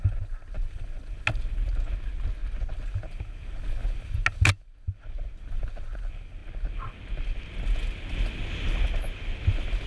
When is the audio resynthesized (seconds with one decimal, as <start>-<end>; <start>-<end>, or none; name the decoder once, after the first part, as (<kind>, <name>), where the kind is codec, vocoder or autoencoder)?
none